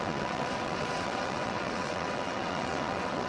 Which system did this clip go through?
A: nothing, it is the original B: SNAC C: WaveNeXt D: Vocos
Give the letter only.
C